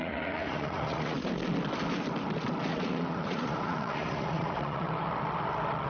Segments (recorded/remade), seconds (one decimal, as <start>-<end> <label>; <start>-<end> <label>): 0.0-1.3 remade; 1.3-2.7 recorded; 2.7-4.9 remade; 4.9-5.9 recorded